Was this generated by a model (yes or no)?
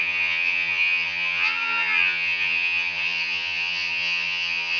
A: yes